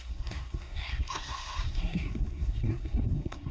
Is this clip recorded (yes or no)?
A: no